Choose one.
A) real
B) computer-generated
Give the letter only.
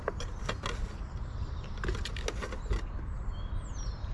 A